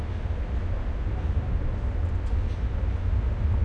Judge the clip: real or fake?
real